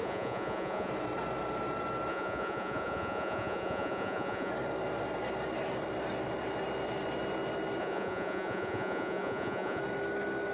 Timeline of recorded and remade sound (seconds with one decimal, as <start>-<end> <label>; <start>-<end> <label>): 0.0-0.9 remade; 0.9-2.1 recorded; 2.1-4.5 remade; 4.5-7.8 recorded; 7.8-9.8 remade; 9.8-10.5 recorded